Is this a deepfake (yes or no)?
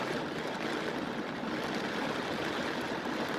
no